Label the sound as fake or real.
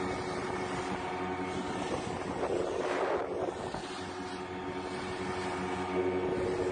real